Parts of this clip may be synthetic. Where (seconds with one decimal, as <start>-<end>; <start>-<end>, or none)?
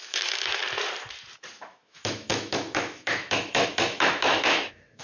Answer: 0.0-0.6; 1.6-5.0